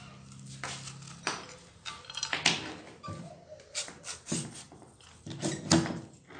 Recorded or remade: recorded